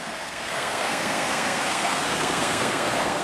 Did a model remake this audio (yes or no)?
yes